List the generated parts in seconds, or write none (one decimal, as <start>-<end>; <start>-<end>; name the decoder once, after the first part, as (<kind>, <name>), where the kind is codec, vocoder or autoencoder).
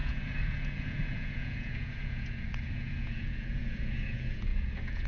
0.0-5.1 (vocoder, Vocos)